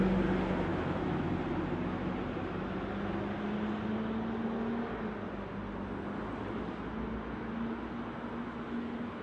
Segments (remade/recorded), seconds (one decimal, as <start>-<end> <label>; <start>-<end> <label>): 0.0-0.7 recorded; 0.7-1.3 remade; 1.3-9.2 recorded